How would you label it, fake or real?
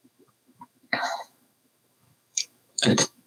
fake